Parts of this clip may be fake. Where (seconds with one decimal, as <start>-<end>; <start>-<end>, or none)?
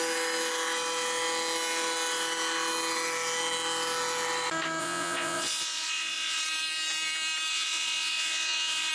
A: 4.8-6.4; 7.5-8.9